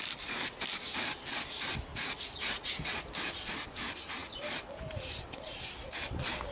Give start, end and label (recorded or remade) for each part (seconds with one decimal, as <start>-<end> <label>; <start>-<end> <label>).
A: 0.0-1.9 recorded; 1.9-3.0 remade; 3.0-6.5 recorded